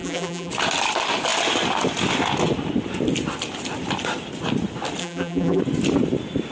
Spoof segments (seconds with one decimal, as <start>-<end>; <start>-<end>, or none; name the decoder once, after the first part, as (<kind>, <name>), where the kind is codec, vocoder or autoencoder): 0.0-0.5 (vocoder, BigVGAN v2); 5.0-5.6